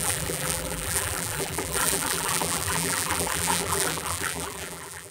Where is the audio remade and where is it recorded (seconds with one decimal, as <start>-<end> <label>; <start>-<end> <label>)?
0.0-5.1 remade